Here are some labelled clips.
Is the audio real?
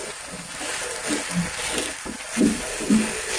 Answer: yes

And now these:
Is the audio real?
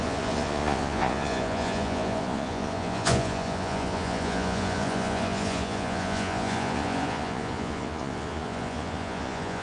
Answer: no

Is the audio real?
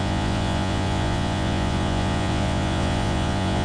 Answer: no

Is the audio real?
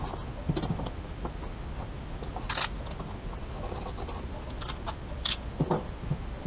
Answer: yes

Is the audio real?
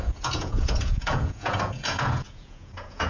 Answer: no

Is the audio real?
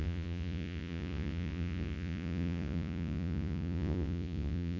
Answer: no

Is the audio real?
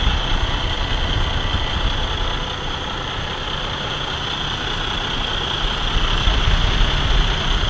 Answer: yes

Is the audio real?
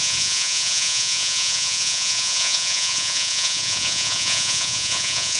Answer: no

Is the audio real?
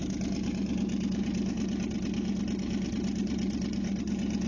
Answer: yes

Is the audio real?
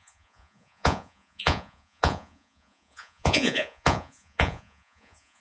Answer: no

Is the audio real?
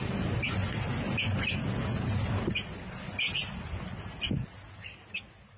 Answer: yes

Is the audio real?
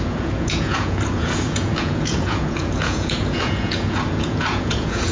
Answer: no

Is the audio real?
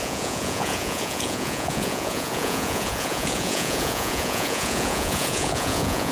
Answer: no